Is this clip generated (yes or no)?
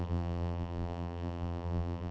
yes